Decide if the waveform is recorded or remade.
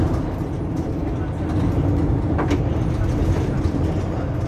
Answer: recorded